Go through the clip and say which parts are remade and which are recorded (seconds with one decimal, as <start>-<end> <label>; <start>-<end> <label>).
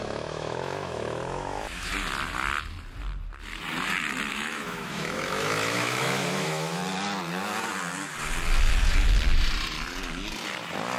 0.0-1.9 remade; 1.9-4.3 recorded; 4.3-6.8 remade; 6.8-11.0 recorded